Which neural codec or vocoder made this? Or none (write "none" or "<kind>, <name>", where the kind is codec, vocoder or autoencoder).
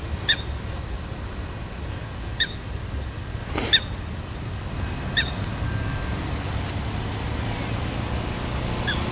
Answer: none